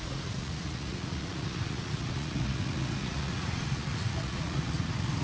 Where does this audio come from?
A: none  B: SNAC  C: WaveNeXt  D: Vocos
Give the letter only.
D